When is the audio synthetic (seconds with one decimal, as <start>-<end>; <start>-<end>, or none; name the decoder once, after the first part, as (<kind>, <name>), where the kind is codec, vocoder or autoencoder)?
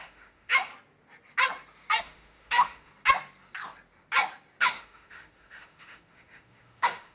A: 0.0-0.7 (autoencoder, DAC-VAE); 2.0-2.9; 4.6-7.1